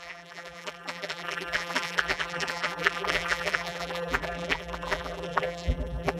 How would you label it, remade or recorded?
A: remade